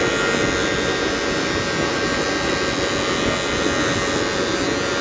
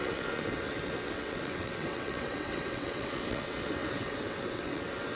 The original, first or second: first